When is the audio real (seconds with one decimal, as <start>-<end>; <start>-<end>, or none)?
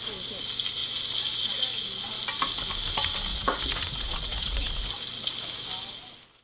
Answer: 0.0-3.3; 4.9-6.4